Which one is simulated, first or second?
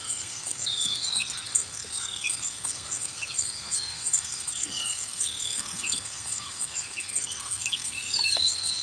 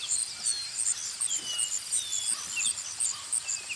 first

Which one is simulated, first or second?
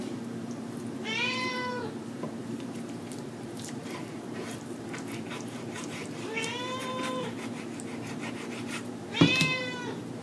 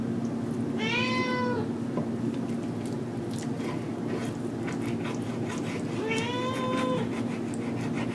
first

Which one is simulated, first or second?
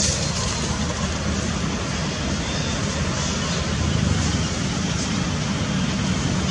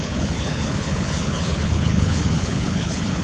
second